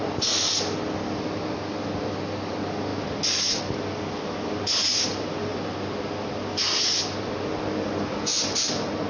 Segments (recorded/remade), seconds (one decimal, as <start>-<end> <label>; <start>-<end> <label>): 0.0-9.1 recorded